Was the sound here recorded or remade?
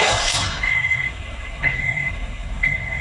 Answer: remade